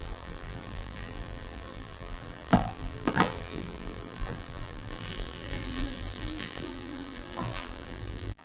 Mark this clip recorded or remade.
remade